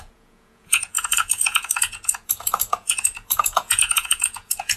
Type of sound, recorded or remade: remade